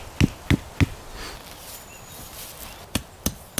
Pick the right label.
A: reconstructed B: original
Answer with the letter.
B